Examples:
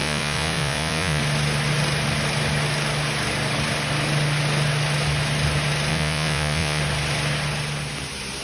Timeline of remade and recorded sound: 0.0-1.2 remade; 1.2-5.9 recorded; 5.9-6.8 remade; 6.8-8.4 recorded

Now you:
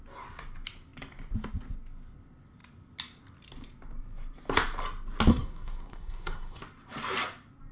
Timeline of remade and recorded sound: 0.0-5.3 recorded; 5.3-6.6 remade; 6.6-7.7 recorded

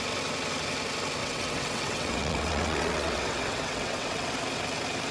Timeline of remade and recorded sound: 0.0-1.2 recorded; 1.2-4.3 remade; 4.3-5.1 recorded

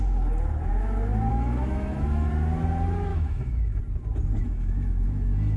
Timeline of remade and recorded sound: 0.0-1.3 recorded; 1.3-2.3 remade; 2.3-3.1 recorded; 3.1-3.8 remade; 3.8-4.4 recorded; 4.4-5.6 remade

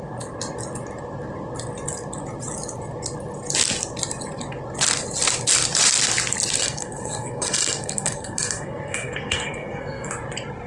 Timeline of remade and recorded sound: 0.0-6.6 recorded; 6.6-10.1 remade; 10.1-10.7 recorded